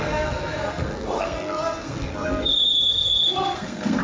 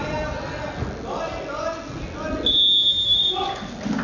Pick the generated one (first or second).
first